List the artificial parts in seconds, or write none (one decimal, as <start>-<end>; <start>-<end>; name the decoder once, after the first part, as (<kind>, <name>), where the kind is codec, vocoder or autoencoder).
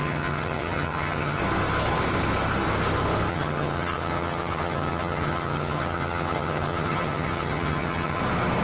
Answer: 0.0-1.4 (vocoder, HiFi-GAN); 3.3-8.2